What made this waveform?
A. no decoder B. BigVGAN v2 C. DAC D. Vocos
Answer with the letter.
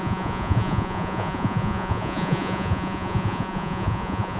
D